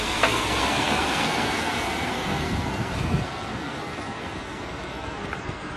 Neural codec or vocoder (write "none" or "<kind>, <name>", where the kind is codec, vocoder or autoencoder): codec, SNAC